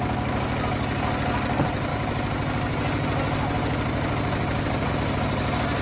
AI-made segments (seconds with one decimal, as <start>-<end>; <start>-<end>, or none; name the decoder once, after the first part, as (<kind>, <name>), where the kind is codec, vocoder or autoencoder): none